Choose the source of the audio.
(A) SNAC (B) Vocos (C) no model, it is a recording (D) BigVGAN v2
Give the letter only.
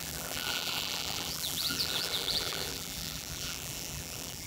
D